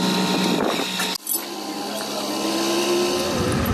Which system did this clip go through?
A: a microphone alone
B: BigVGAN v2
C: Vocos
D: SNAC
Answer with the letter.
A